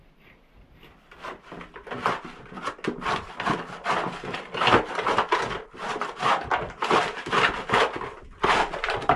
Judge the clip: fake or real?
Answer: real